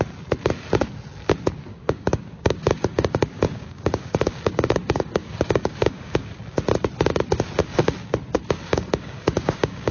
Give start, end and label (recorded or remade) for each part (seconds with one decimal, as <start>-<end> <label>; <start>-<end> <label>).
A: 0.0-1.7 recorded; 1.7-6.3 remade; 6.3-8.7 recorded; 8.7-9.9 remade